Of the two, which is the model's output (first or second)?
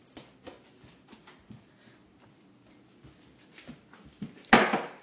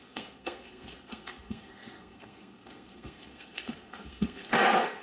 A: second